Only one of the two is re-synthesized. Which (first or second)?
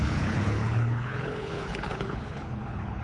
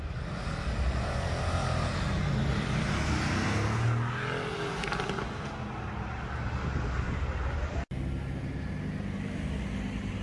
first